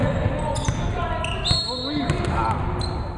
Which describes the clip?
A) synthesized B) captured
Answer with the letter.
B